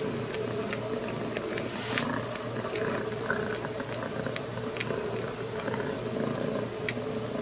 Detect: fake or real real